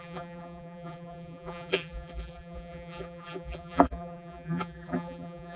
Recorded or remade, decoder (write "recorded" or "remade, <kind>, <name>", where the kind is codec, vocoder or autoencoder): remade, vocoder, BigVGAN v2